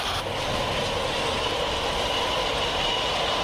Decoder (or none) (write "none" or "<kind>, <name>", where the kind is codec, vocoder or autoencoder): none